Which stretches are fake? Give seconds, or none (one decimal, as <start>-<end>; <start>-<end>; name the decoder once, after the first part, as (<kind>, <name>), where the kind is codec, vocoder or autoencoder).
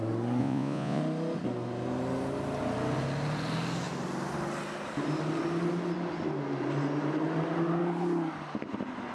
0.4-1.0 (vocoder, Vocos)